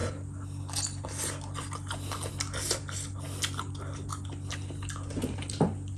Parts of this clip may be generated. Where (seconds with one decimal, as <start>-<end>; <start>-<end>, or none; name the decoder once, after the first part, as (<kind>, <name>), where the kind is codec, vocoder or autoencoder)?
none